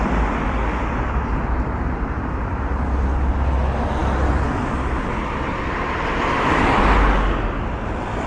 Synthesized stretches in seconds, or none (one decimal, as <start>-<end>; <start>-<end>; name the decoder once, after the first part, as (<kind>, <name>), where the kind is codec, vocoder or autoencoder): none